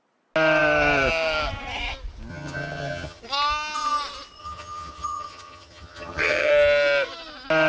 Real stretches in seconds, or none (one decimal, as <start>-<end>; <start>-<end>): 0.0-2.3; 3.2-4.4; 6.5-7.7